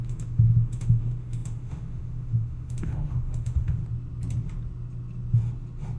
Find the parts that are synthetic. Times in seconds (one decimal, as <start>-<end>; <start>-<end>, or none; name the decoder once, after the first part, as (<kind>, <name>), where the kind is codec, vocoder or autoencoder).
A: 0.0-3.8 (autoencoder, DAC-VAE)